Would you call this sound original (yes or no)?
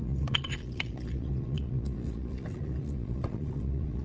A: no